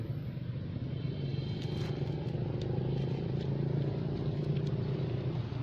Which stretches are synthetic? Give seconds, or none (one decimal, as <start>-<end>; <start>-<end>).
none